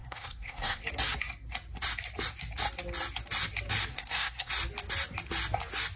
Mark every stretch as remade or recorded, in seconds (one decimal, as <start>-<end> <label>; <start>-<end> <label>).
0.0-0.8 remade; 0.8-3.9 recorded; 3.9-4.5 remade; 4.5-6.0 recorded